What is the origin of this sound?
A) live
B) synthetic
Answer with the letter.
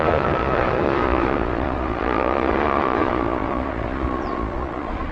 B